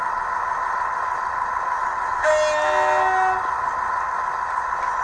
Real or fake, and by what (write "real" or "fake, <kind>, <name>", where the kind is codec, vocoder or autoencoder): real